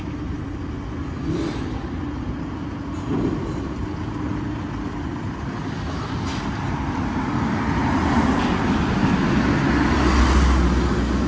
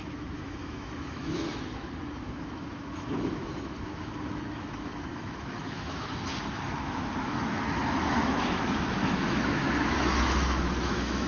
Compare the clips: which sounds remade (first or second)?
second